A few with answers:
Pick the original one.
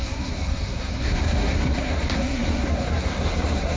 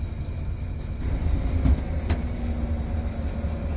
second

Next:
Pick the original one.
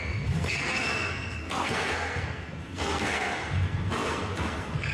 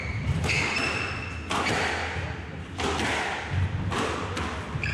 second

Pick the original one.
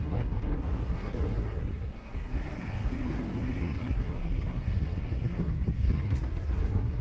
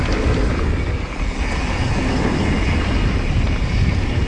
second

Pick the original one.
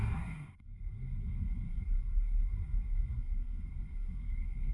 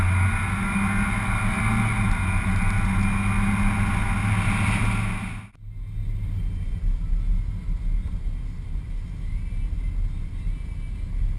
second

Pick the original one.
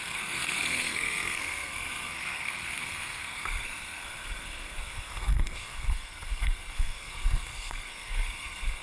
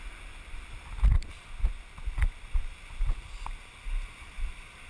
second